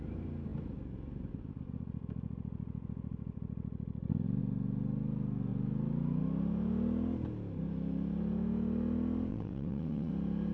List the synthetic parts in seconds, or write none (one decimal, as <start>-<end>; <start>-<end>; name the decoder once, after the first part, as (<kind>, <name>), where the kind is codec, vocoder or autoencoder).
9.3-10.1 (vocoder, WaveNeXt)